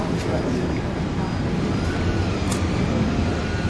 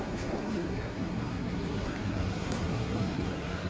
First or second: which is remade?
second